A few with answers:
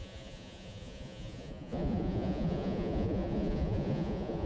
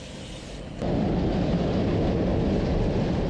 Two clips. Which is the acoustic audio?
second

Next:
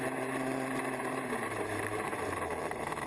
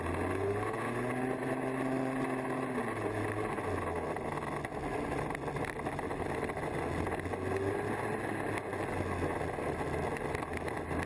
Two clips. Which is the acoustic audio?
second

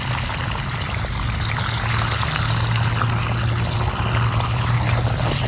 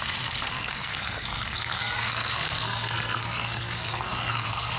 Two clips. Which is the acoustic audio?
first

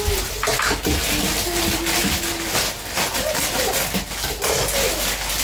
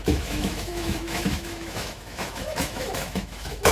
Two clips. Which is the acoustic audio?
first